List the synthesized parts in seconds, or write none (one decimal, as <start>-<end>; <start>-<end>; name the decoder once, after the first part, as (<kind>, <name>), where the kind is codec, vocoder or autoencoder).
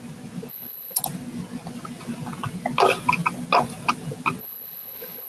0.5-1.0 (codec, HILCodec); 4.4-5.3